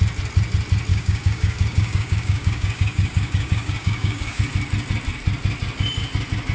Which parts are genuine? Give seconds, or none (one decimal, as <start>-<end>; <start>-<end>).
0.0-0.9; 4.4-6.5